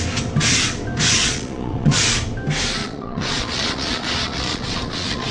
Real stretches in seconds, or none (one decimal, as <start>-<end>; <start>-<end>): 0.0-1.2; 2.0-2.8